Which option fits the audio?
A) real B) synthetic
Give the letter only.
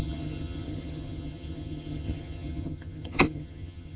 B